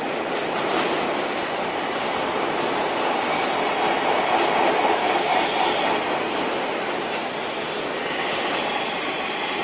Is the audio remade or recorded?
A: recorded